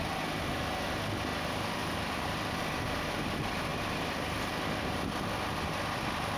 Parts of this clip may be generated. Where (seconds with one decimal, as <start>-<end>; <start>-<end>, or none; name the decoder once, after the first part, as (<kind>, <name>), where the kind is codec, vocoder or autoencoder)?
1.3-2.3 (vocoder, BigVGAN v2)